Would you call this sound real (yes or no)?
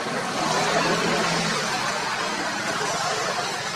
yes